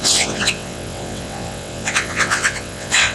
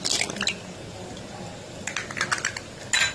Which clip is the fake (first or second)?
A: first